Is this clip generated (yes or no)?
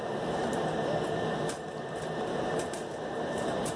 no